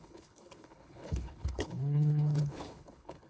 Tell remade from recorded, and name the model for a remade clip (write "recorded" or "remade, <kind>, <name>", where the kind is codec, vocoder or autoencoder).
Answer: remade, codec, HILCodec